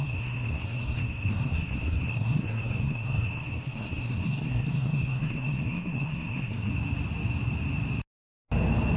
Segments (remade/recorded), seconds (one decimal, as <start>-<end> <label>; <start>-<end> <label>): 0.0-6.7 remade; 6.7-9.0 recorded